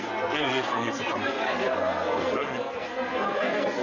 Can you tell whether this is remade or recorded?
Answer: remade